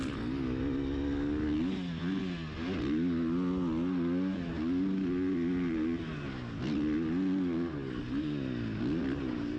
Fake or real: real